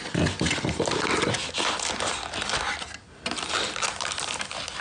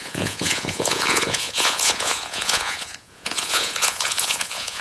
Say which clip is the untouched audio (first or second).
first